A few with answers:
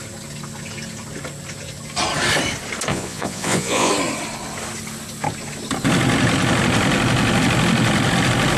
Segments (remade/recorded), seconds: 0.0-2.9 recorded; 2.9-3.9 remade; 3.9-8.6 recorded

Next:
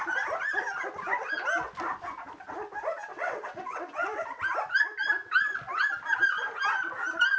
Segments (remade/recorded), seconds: 0.0-3.1 recorded; 3.1-4.4 remade; 4.4-7.4 recorded

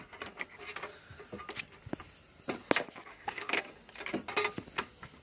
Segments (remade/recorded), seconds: 0.0-3.1 recorded; 3.1-3.6 remade; 3.6-5.2 recorded

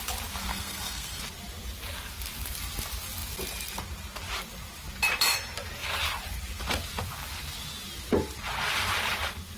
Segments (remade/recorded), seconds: 0.0-0.5 recorded; 0.5-1.2 remade; 1.2-9.6 recorded

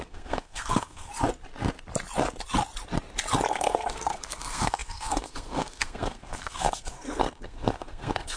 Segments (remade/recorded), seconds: 0.0-1.1 remade; 1.1-3.5 recorded; 3.5-8.4 remade

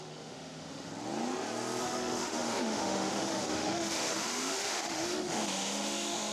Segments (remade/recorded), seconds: 0.0-0.9 remade; 0.9-1.8 recorded; 1.8-6.3 remade